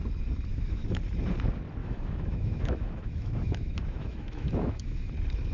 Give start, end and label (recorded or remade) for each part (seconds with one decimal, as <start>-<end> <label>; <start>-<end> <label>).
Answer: 0.0-0.5 recorded; 0.5-1.0 remade; 1.0-1.8 recorded; 1.8-5.1 remade; 5.1-5.5 recorded